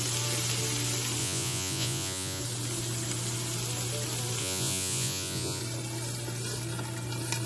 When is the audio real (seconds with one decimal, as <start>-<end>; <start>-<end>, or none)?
0.0-1.2; 2.4-4.4; 5.6-7.5